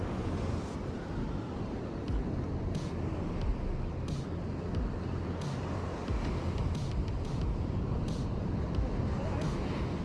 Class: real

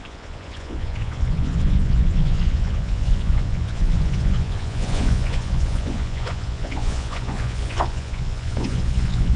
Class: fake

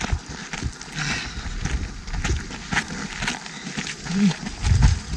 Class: real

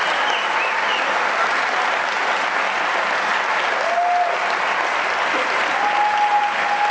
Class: real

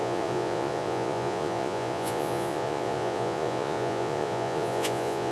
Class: fake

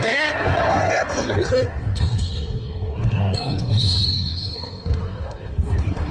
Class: fake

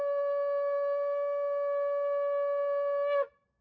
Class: real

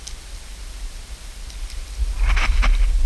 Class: real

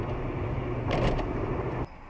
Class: real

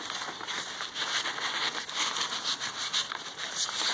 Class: real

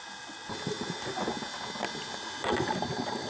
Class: real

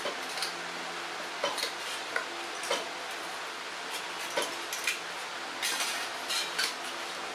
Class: real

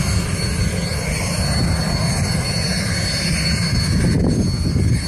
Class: real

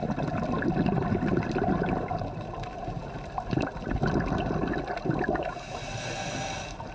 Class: real